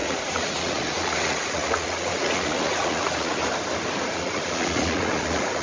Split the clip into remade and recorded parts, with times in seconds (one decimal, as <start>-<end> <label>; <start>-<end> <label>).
0.0-3.4 remade; 3.4-4.0 recorded; 4.0-5.6 remade